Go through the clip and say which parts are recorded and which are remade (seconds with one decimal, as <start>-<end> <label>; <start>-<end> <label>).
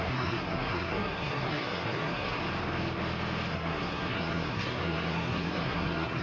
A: 0.0-2.4 remade; 2.4-3.5 recorded; 3.5-6.2 remade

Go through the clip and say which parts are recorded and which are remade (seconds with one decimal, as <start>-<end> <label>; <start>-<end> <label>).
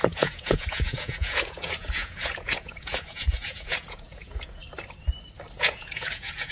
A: 0.0-4.6 remade; 4.6-5.6 recorded; 5.6-6.5 remade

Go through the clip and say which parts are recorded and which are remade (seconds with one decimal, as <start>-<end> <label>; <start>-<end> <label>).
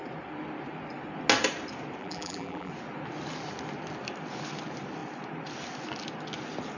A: 0.0-2.0 recorded; 2.0-2.7 remade; 2.7-6.8 recorded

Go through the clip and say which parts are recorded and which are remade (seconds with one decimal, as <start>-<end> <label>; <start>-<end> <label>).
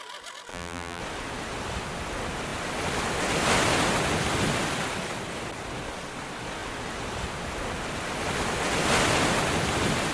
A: 0.0-0.5 recorded; 0.5-1.0 remade; 1.0-10.1 recorded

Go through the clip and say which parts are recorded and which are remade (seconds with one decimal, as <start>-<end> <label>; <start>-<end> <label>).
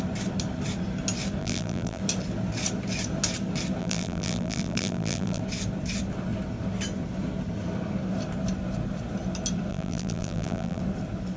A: 0.0-1.4 recorded; 1.4-2.0 remade; 2.0-3.8 recorded; 3.8-5.4 remade; 5.4-9.7 recorded; 9.7-10.8 remade; 10.8-11.4 recorded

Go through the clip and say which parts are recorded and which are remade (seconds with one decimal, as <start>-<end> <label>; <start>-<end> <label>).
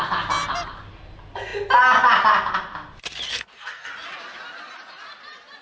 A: 0.0-3.3 recorded; 3.3-3.9 remade; 3.9-5.6 recorded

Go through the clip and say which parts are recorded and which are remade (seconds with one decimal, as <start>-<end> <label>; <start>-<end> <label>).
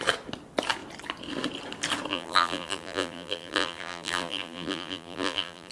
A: 0.0-2.1 recorded; 2.1-5.7 remade